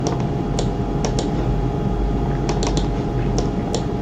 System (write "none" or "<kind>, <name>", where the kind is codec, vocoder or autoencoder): none